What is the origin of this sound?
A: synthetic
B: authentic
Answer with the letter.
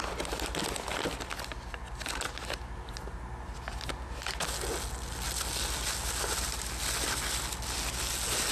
B